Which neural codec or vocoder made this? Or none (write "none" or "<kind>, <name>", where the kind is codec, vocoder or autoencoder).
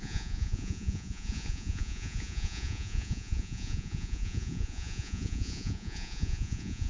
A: vocoder, Vocos